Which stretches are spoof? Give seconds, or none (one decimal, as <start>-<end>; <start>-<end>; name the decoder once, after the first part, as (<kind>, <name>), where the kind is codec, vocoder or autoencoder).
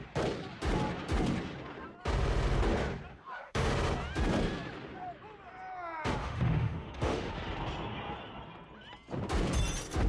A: 3.1-3.7 (autoencoder, DAC-VAE); 6.2-7.3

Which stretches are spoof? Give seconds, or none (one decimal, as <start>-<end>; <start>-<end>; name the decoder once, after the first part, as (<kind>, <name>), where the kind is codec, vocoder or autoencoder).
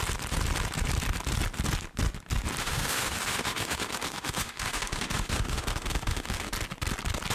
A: 2.6-6.5 (autoencoder, DAC-VAE)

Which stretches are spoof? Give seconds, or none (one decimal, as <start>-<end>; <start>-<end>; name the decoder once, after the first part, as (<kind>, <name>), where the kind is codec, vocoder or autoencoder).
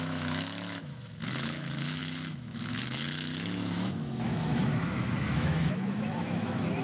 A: 0.0-6.8 (autoencoder, DAC-VAE)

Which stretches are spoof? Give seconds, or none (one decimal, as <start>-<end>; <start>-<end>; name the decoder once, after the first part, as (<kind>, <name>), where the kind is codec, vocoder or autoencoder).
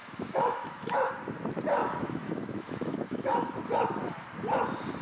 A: 0.0-1.1 (autoencoder, DAC-VAE); 1.8-3.7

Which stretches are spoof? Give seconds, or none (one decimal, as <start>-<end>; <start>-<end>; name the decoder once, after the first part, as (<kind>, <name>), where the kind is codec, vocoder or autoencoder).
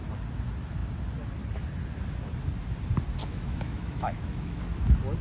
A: 3.2-4.6 (autoencoder, DAC-VAE)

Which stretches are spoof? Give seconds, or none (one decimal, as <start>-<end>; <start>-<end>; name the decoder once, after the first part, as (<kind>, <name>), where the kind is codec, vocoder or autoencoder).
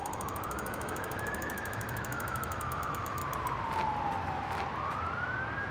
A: 0.0-3.2 (autoencoder, DAC-VAE)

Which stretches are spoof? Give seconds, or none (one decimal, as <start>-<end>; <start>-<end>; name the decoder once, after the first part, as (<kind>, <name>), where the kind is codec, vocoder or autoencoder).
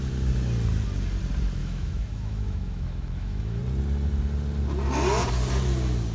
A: 1.6-3.6 (autoencoder, DAC-VAE)